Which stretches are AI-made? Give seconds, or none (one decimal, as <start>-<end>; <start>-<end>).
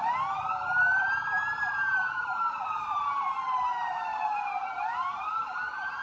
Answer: 4.1-6.0